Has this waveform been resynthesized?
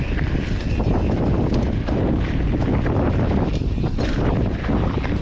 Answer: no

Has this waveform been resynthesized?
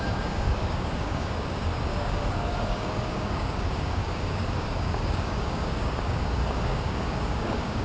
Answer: yes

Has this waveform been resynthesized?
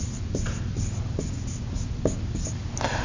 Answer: no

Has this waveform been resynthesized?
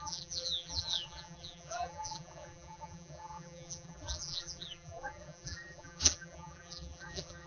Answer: yes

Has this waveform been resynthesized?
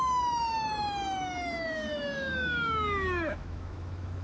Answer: yes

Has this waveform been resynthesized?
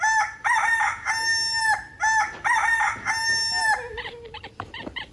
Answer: no